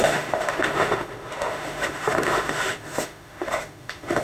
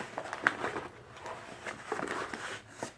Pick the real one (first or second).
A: second